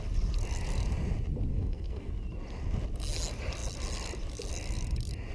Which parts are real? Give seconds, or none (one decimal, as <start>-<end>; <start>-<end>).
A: 0.0-1.5; 2.1-5.3